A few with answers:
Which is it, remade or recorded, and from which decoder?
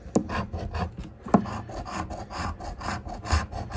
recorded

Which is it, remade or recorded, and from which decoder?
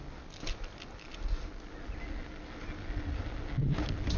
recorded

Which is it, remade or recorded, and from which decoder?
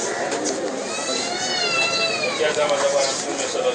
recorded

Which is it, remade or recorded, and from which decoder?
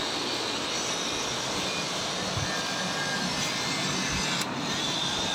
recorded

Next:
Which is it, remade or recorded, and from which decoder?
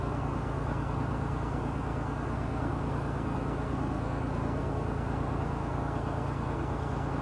remade, codec, SNAC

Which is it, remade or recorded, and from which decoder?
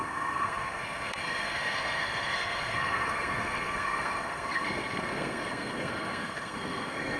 remade, codec, SNAC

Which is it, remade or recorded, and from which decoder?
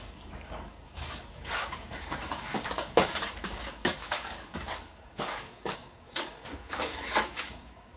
remade, codec, DAC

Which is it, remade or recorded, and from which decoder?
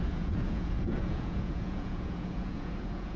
remade, vocoder, Vocos